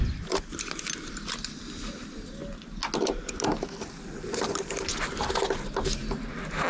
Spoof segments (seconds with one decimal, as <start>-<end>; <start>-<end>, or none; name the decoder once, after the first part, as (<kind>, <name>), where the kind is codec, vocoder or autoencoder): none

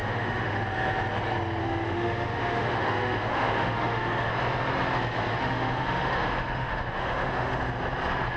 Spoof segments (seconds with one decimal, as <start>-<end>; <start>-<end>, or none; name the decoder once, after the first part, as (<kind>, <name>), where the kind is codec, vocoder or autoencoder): 0.0-0.6 (autoencoder, DAC-VAE); 1.6-4.3; 5.3-7.6

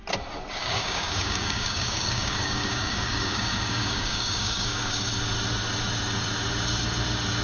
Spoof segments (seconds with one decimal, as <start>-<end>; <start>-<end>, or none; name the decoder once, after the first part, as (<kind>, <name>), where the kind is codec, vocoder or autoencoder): 0.6-5.0 (codec, DAC)

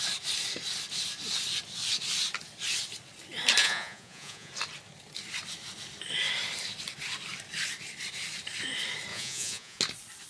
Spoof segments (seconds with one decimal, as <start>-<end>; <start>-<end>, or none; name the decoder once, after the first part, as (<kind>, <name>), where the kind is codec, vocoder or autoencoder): 3.6-4.5 (vocoder, Vocos); 9.1-9.8

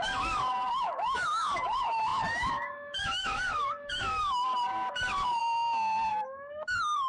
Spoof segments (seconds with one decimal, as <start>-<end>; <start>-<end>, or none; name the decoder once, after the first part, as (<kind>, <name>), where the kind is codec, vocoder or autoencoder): 0.0-5.4 (codec, DAC); 6.1-7.1

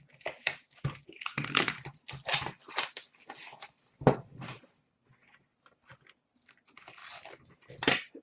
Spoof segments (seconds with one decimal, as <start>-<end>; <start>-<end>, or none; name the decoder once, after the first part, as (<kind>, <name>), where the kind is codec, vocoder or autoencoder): 0.0-7.0 (vocoder, BigVGAN v2)

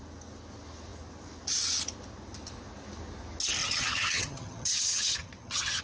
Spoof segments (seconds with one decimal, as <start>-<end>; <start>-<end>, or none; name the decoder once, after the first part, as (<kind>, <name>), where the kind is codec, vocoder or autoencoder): 3.6-5.8 (vocoder, HiFi-GAN)